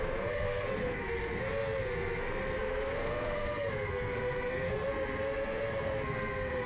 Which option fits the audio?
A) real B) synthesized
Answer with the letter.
B